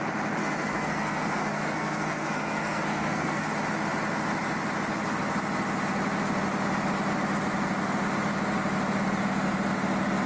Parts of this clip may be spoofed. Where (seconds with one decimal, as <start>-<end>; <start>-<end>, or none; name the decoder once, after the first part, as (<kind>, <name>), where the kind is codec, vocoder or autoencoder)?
0.4-3.5 (codec, SNAC)

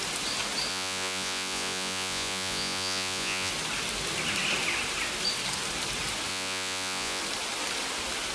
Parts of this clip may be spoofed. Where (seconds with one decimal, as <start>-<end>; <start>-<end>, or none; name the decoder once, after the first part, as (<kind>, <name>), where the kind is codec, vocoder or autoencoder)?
0.7-3.5 (vocoder, Vocos); 6.3-7.2

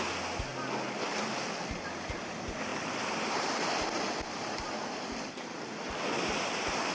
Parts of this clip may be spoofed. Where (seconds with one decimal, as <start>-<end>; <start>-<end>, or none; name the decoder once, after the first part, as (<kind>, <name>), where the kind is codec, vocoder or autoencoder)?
2.7-6.9 (vocoder, BigVGAN v2)

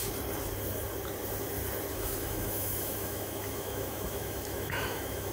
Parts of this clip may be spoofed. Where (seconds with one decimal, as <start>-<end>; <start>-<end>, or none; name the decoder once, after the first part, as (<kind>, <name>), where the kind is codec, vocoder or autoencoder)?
1.9-5.3 (autoencoder, DAC-VAE)

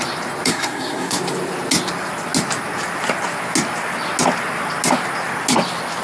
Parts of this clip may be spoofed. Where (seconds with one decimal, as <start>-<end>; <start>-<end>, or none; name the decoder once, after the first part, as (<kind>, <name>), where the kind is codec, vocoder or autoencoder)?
0.5-1.2 (codec, SNAC)

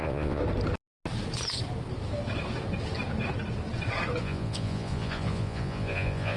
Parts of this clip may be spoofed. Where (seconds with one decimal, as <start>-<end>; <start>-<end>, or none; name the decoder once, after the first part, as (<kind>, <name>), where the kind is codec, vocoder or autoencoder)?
0.0-0.4 (vocoder, Vocos); 4.2-6.4